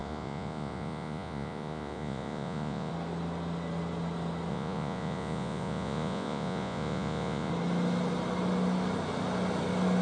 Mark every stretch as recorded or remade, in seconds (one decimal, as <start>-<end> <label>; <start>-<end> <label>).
0.0-2.9 remade; 2.9-4.5 recorded; 4.5-7.5 remade; 7.5-10.0 recorded